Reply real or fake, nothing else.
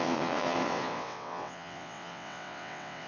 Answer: fake